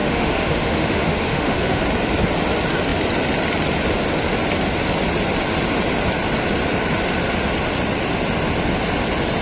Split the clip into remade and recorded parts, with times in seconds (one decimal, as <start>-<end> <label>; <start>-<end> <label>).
0.0-1.8 remade; 1.8-9.4 recorded